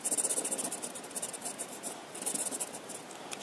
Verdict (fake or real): real